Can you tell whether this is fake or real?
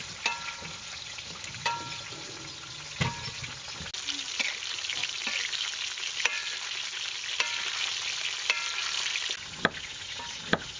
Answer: real